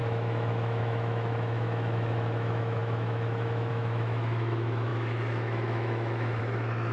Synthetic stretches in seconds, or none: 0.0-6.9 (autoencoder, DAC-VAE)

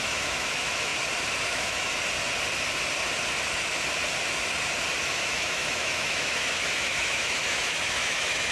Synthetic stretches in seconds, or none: 0.0-0.9 (autoencoder, DAC-VAE); 1.5-1.9; 5.0-8.5

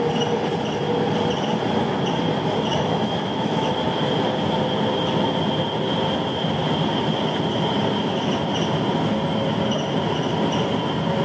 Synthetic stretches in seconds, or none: 2.7-3.7 (autoencoder, DAC-VAE)